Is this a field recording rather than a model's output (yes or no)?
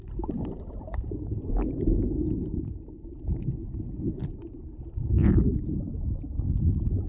yes